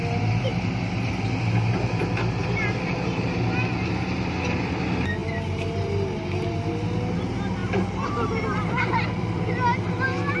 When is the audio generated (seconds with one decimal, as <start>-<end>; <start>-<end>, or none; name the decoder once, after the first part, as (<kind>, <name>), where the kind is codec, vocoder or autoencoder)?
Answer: 0.5-1.1 (vocoder, BigVGAN v2); 2.4-3.7; 7.6-9.4